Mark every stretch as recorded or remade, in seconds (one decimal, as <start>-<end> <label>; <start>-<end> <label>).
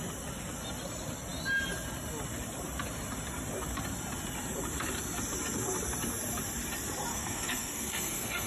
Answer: 0.0-7.1 recorded; 7.1-8.5 remade